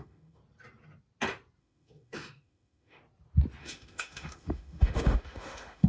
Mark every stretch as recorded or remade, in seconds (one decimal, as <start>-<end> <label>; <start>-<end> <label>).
0.0-0.4 remade; 0.4-1.6 recorded; 1.6-3.0 remade; 3.0-3.6 recorded; 3.6-5.9 remade